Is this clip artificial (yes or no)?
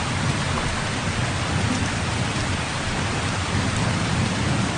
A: no